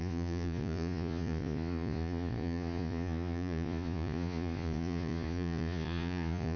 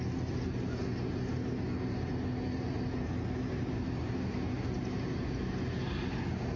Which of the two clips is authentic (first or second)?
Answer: second